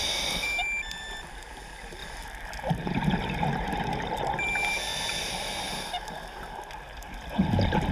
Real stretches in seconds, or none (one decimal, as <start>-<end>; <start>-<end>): 0.0-7.9